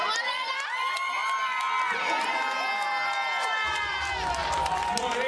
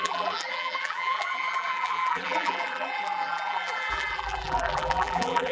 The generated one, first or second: second